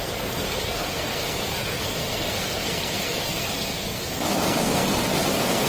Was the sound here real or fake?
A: fake